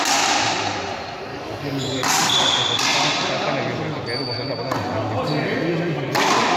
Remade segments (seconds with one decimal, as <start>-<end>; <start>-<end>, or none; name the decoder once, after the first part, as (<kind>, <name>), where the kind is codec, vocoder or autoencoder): 1.3-2.3 (codec, DAC)